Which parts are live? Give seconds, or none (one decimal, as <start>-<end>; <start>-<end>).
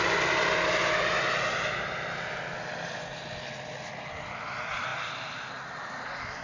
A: 0.0-6.4